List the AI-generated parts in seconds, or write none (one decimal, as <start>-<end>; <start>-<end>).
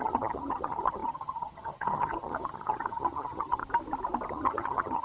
0.0-3.6; 4.3-5.0